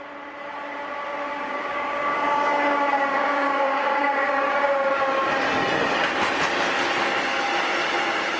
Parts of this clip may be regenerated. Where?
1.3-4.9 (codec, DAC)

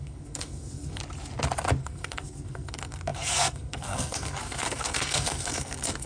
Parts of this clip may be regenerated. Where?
0.0-1.0 (codec, SNAC); 1.8-6.1

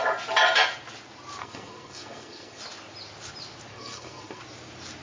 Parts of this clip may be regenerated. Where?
1.4-2.6 (codec, SNAC); 3.7-4.4

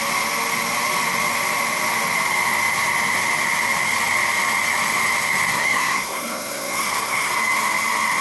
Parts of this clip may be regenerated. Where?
5.5-7.3 (codec, SNAC)

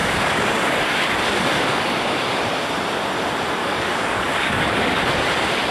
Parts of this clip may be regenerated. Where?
0.0-2.4 (codec, DAC); 3.6-5.0

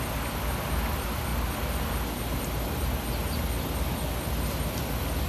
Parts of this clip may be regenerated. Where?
0.0-1.3 (vocoder, BigVGAN v2); 4.5-5.3